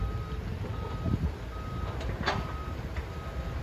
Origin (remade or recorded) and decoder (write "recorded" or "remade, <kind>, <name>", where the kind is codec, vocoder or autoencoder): recorded